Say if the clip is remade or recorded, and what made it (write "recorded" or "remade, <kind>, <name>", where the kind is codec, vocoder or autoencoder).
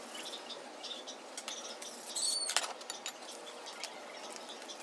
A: recorded